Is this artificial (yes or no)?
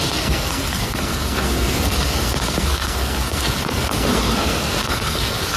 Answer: yes